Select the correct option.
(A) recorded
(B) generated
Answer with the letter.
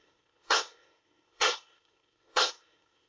B